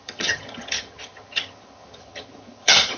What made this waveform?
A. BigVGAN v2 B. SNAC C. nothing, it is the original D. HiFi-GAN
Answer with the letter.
D